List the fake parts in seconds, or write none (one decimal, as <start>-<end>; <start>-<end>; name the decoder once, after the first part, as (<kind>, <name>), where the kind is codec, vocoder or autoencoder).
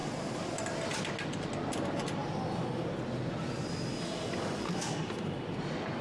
none